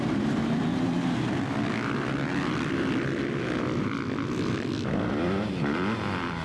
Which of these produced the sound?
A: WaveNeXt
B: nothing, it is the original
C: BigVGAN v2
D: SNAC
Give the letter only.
B